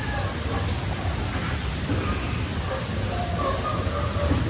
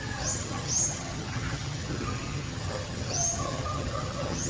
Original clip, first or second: first